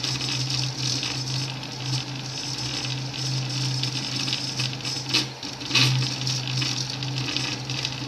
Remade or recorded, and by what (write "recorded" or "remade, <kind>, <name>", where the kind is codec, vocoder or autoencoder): recorded